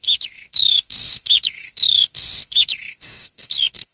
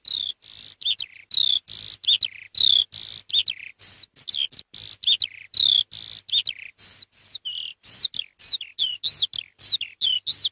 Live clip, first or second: second